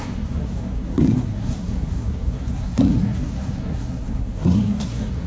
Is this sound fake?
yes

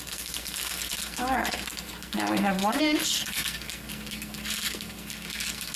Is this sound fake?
yes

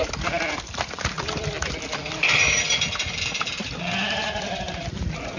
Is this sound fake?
no